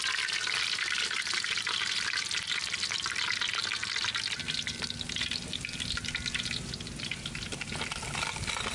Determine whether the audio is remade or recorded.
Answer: recorded